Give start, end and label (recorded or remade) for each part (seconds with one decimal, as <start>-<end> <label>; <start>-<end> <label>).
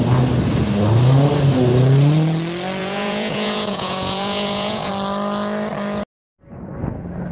0.0-2.8 recorded; 2.8-4.9 remade; 4.9-7.3 recorded